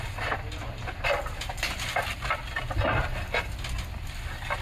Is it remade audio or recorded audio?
recorded